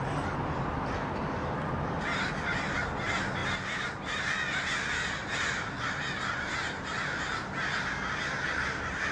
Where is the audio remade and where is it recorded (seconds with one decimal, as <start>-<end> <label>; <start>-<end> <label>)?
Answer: 0.0-9.1 recorded